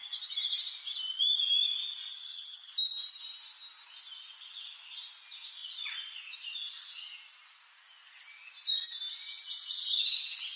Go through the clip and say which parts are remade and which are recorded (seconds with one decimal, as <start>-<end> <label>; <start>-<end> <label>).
0.0-2.1 recorded; 2.1-2.7 remade; 2.7-10.6 recorded